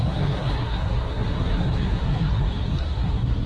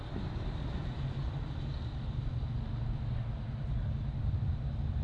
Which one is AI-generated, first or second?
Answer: first